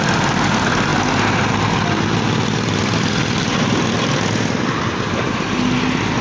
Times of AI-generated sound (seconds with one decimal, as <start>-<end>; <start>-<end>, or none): none